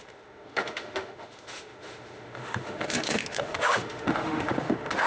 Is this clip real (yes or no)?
no